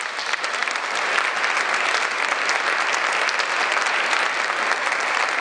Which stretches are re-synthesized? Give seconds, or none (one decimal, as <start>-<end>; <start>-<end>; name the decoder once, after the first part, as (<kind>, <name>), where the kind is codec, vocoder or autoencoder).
none